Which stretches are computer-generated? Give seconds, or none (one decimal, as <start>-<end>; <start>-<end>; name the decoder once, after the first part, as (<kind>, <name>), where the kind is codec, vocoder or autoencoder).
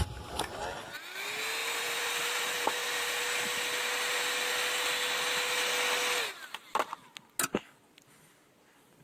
1.6-3.2 (vocoder, BigVGAN v2)